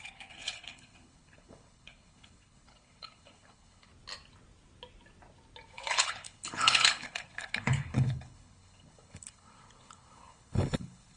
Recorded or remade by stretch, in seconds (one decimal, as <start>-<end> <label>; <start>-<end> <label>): 0.0-3.9 remade; 3.9-5.7 recorded; 5.7-11.2 remade